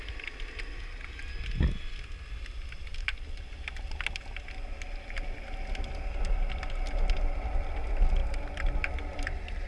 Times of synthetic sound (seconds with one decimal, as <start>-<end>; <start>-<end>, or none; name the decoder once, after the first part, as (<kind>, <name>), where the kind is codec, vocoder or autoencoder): none